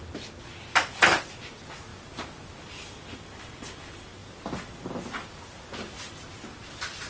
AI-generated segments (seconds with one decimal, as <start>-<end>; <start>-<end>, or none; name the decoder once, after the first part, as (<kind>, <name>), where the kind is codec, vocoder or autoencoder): none